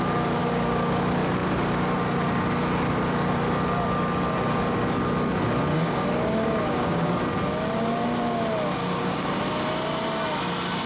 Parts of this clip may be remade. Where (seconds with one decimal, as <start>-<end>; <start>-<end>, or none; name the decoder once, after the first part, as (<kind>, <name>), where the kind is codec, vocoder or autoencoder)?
0.4-1.0 (codec, DAC); 5.7-7.2; 8.8-9.4